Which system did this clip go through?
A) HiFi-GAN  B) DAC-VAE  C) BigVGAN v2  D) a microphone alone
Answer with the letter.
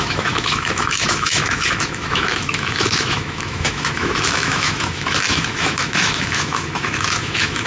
B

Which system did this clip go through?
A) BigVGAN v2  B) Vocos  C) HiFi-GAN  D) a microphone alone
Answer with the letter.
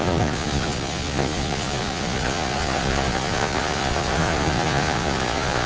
B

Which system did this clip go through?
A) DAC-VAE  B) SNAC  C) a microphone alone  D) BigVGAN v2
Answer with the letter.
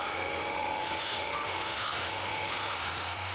A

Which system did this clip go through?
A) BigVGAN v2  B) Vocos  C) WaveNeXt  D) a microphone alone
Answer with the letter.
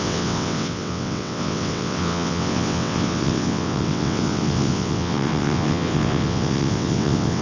C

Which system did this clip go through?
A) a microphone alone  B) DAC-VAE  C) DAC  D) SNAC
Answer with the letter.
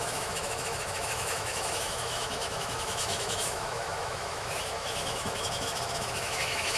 B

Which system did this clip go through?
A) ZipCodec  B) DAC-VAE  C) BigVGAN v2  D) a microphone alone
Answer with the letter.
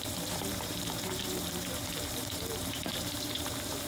C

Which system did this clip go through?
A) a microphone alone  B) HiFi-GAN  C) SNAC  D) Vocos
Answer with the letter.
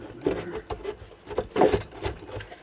A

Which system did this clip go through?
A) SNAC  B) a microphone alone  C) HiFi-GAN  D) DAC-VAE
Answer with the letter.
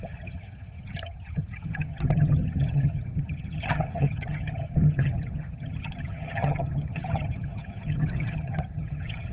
C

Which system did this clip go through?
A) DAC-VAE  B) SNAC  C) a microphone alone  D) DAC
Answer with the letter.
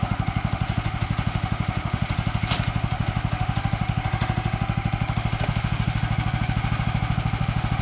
A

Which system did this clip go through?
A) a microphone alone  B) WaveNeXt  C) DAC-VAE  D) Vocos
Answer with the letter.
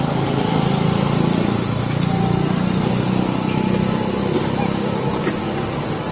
A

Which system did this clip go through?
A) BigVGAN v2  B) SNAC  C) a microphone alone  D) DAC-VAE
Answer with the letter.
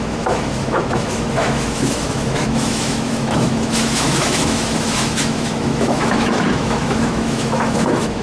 D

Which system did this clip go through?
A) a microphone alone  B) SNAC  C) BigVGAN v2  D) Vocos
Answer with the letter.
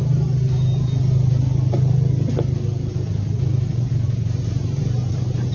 A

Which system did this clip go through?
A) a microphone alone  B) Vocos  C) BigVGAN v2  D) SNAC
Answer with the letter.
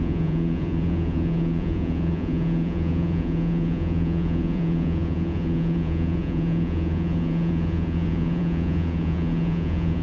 B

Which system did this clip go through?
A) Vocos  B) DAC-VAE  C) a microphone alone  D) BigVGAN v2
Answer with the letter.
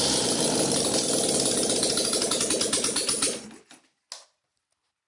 C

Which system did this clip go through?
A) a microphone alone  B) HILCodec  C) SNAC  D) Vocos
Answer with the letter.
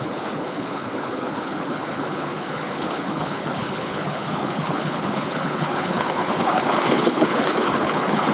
B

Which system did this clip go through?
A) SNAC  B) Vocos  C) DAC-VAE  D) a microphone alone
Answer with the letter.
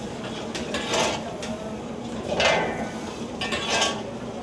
D